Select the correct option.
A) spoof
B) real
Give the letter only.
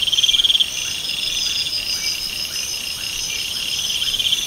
B